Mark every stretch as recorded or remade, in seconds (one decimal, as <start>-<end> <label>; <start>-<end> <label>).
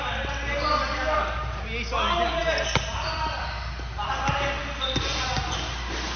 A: 0.0-6.2 recorded